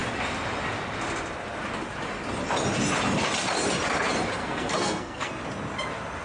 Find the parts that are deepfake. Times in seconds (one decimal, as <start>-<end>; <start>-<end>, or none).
4.4-5.3